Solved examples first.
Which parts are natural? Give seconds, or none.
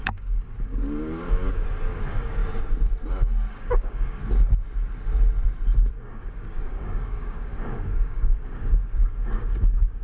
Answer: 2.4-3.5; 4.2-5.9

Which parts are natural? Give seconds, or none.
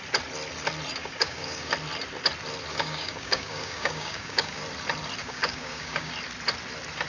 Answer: 0.0-1.0; 1.7-2.7; 4.6-5.2; 6.1-7.1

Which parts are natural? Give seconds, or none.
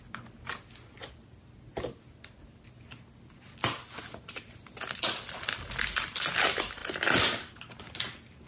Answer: 0.0-8.5